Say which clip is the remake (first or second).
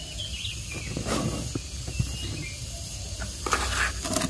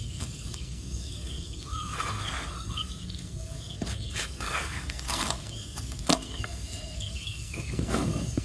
second